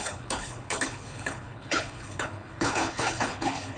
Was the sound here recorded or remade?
remade